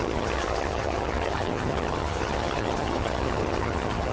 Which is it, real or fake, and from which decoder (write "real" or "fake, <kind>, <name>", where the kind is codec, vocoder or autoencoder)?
fake, vocoder, HiFi-GAN